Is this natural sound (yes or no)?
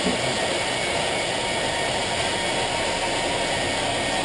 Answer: yes